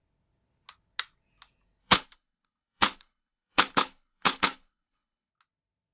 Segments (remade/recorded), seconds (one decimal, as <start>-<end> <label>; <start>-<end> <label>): 0.0-1.8 recorded; 1.8-5.3 remade; 5.3-5.9 recorded